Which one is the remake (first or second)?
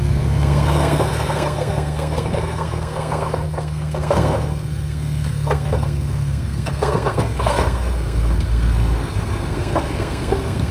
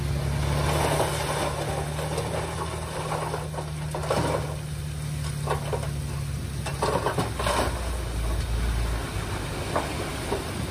first